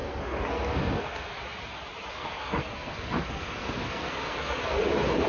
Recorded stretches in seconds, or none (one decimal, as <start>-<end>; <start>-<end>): 1.3-2.1; 4.8-5.3